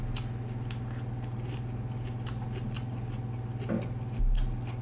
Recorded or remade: recorded